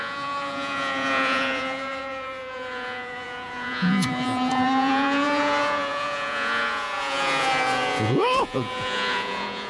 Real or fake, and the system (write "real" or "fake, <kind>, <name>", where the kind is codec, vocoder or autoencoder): fake, vocoder, Vocos